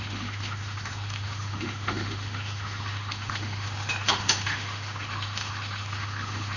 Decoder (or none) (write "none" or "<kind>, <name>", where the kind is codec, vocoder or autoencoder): autoencoder, DAC-VAE